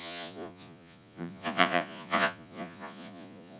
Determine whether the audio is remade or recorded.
remade